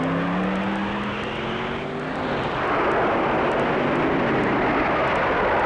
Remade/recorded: recorded